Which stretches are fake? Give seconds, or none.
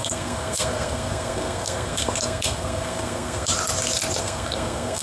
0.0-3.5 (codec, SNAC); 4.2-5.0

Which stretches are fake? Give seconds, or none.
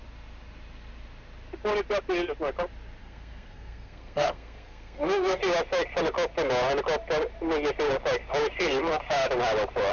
3.0-5.4 (codec, SNAC)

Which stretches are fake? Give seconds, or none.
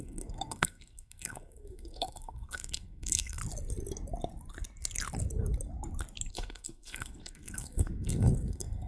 0.0-3.4 (codec, SNAC); 6.3-8.9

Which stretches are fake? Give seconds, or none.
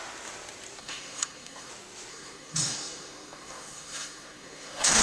0.8-1.7 (codec, SNAC); 2.1-5.0